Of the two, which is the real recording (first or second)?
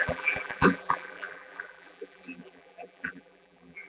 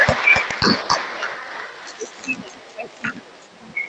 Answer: second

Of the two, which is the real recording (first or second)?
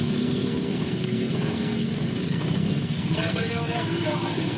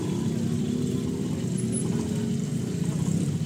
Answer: second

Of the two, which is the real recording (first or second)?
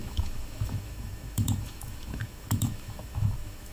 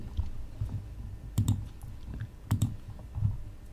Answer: second